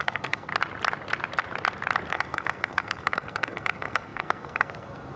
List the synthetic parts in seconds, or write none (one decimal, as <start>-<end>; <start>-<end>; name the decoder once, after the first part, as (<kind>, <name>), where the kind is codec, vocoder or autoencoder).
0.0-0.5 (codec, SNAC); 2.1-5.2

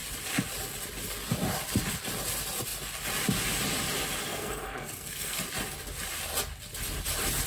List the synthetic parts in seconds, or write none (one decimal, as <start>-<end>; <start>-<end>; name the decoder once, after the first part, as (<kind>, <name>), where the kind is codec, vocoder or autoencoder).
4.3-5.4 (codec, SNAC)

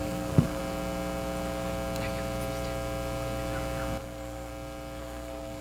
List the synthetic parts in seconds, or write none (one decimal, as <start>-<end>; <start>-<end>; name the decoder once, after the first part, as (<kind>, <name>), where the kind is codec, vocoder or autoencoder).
0.0-0.6 (codec, SNAC); 4.0-4.5; 5.0-5.6

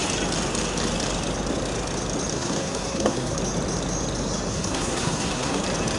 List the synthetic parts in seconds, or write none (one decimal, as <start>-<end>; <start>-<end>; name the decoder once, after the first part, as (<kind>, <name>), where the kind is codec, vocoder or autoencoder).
2.3-3.4 (codec, SNAC); 4.5-5.6

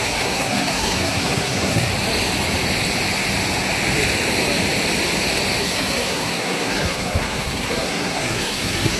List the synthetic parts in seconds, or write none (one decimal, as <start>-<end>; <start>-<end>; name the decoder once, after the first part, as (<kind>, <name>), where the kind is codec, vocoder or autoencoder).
0.0-1.9 (codec, SNAC); 5.6-9.0

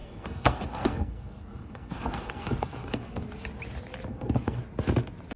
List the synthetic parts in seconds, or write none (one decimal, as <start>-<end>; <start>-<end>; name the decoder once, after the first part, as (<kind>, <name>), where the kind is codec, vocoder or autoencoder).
0.0-3.2 (codec, SNAC); 4.1-4.6